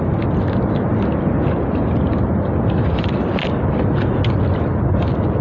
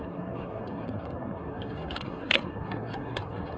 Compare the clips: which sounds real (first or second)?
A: first